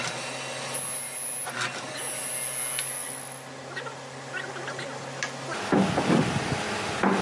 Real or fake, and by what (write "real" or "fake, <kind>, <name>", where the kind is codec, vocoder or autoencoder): real